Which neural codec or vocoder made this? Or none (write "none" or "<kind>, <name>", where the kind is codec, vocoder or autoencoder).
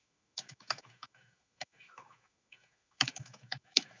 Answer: autoencoder, DAC-VAE